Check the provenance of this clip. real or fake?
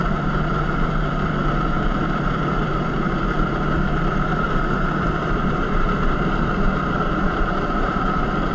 fake